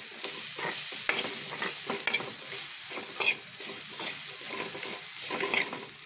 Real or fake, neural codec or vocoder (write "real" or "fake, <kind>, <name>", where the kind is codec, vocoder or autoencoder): real